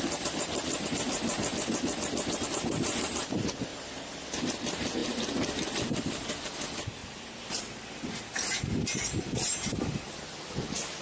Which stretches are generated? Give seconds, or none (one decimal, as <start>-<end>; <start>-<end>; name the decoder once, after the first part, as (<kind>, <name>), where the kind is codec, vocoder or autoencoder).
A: 7.0-7.6 (vocoder, BigVGAN v2)